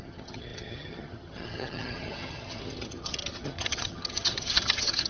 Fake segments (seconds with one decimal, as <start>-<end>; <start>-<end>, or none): 0.0-5.1